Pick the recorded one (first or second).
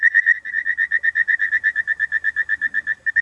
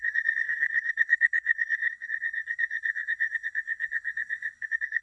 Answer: first